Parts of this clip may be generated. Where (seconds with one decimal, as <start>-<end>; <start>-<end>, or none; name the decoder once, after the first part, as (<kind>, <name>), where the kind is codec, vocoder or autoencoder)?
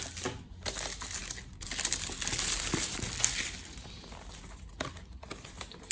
none